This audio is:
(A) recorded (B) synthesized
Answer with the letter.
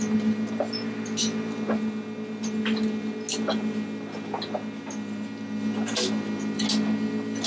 A